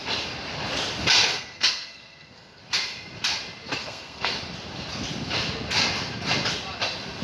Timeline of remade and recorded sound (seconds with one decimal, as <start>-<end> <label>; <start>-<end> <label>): 0.0-1.2 recorded; 1.2-2.6 remade; 2.6-3.8 recorded; 3.8-4.3 remade; 4.3-7.2 recorded